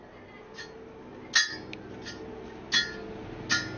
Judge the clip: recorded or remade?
recorded